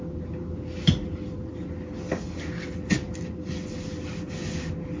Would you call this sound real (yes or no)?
yes